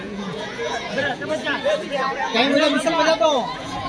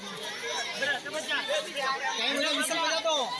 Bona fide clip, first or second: second